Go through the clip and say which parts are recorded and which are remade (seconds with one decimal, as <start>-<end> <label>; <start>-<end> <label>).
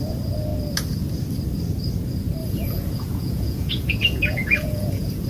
0.0-2.4 recorded; 2.4-5.3 remade